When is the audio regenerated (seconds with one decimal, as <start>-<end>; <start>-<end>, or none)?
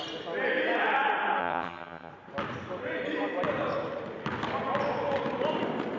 1.4-2.1